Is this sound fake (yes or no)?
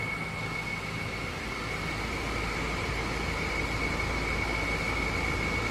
no